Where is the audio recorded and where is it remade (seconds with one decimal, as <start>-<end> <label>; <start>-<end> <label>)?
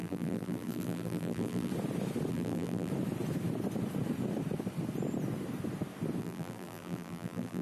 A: 0.0-1.7 remade; 1.7-2.3 recorded; 2.3-2.9 remade; 2.9-6.2 recorded; 6.2-7.6 remade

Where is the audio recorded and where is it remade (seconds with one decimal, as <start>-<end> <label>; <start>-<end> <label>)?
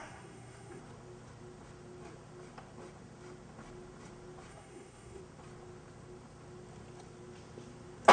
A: 0.0-0.8 remade; 0.8-4.5 recorded; 4.5-5.2 remade; 5.2-8.1 recorded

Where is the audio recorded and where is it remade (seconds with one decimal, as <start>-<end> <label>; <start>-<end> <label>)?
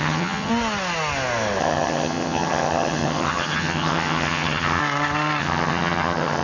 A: 0.0-0.5 remade; 0.5-1.6 recorded; 1.6-4.8 remade; 4.8-5.4 recorded; 5.4-6.4 remade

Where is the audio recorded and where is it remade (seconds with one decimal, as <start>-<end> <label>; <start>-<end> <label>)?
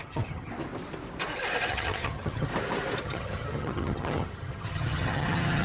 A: 0.0-0.5 remade; 0.5-1.7 recorded; 1.7-2.5 remade; 2.5-3.0 recorded; 3.0-5.6 remade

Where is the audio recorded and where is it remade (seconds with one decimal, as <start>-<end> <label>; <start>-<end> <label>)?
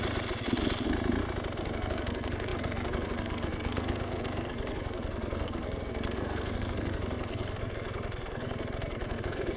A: 0.0-1.6 recorded; 1.6-9.6 remade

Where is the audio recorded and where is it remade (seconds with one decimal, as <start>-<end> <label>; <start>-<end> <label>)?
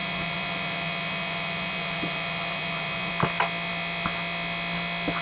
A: 0.0-3.1 remade; 3.1-5.2 recorded